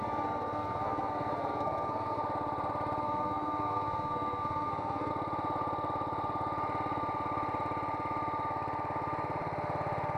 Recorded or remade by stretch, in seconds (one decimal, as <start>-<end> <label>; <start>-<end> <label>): 0.0-2.2 remade; 2.2-3.0 recorded; 3.0-5.1 remade; 5.1-10.2 recorded